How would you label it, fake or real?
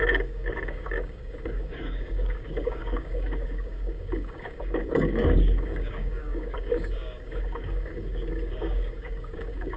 fake